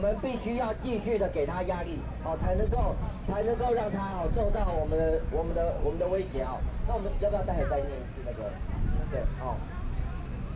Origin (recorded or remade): recorded